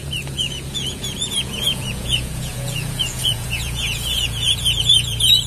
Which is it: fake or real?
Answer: fake